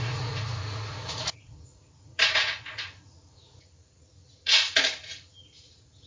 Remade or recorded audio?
remade